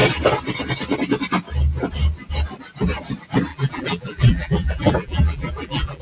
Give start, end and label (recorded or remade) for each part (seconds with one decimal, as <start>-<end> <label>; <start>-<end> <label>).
0.0-3.5 recorded; 3.5-6.0 remade